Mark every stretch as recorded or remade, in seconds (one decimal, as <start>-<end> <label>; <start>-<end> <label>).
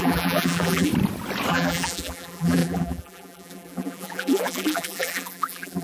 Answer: 0.0-0.9 remade; 0.9-1.5 recorded; 1.5-5.8 remade